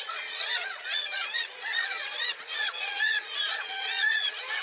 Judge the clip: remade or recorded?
remade